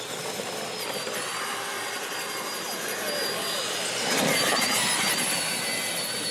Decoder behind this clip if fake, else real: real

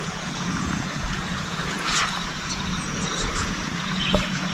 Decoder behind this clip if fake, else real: fake, vocoder, Vocos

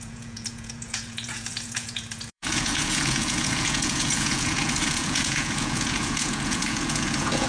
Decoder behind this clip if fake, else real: fake, vocoder, Vocos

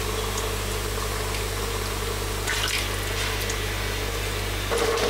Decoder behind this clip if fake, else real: real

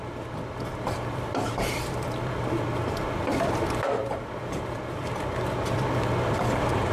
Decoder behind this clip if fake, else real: fake, vocoder, BigVGAN v2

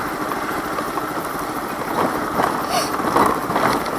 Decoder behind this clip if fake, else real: real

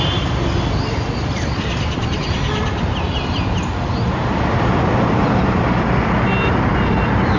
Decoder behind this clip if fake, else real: real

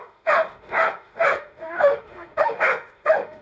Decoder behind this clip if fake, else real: fake, autoencoder, DAC-VAE